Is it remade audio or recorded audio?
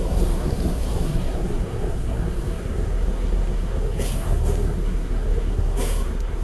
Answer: remade